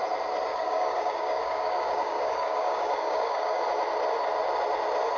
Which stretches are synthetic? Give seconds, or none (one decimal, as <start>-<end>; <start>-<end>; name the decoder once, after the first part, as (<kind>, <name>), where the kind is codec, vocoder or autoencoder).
0.5-3.6 (codec, DAC)